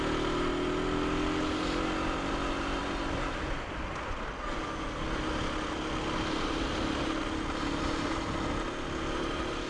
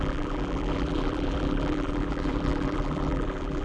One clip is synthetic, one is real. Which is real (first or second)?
first